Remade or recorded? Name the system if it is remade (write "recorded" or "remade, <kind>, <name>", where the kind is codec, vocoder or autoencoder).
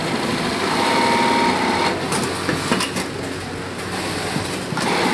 recorded